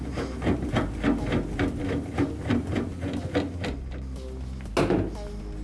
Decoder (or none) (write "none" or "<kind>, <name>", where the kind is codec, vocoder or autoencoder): none